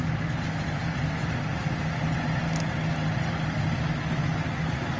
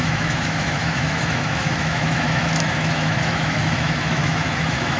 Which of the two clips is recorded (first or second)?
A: first